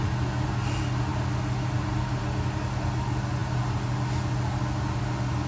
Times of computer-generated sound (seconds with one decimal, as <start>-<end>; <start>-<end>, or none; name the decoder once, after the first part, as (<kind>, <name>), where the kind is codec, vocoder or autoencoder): none